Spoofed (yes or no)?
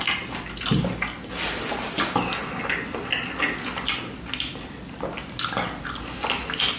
no